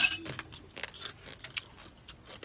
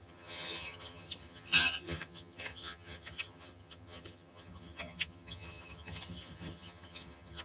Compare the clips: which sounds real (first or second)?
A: first